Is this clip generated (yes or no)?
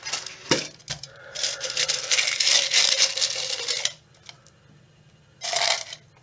no